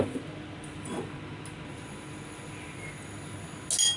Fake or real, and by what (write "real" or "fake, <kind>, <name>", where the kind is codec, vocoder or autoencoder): real